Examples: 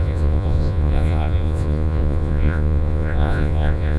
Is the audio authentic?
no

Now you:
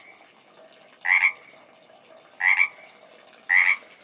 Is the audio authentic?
yes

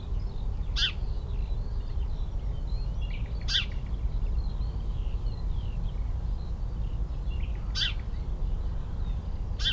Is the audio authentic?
yes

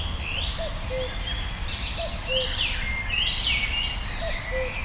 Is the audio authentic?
yes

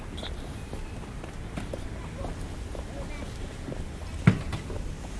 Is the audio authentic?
yes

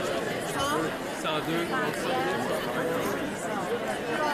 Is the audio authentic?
yes